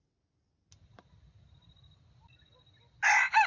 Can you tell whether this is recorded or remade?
recorded